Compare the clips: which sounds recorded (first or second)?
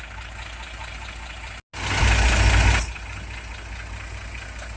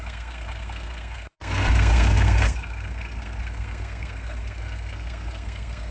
first